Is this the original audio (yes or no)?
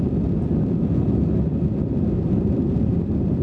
yes